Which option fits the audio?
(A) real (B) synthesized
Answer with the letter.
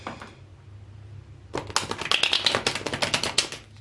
A